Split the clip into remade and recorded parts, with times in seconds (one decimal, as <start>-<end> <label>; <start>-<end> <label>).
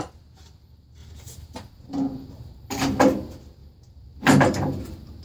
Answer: 0.0-1.0 recorded; 1.0-3.0 remade; 3.0-3.6 recorded; 3.6-5.2 remade